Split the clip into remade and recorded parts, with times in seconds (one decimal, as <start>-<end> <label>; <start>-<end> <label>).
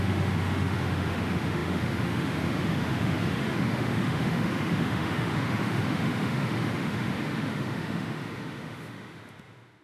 0.0-9.8 remade